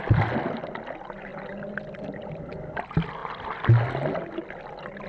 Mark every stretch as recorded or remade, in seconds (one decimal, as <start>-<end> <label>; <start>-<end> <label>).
0.0-5.1 recorded